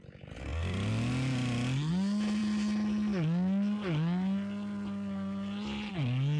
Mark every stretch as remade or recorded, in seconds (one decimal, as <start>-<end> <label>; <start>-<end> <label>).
0.0-6.4 recorded